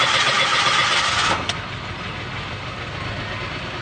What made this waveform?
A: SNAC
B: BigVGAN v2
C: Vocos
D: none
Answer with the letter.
D